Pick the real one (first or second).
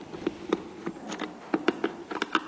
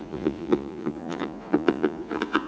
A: first